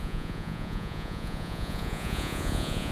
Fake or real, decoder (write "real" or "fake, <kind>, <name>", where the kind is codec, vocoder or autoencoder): fake, vocoder, Vocos